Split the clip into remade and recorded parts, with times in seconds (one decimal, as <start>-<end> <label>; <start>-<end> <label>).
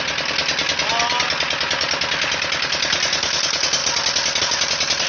0.0-5.1 recorded